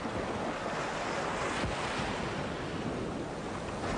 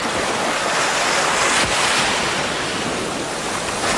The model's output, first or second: second